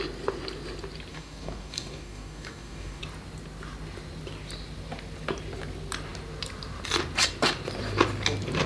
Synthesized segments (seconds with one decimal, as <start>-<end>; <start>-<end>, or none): 1.1-3.0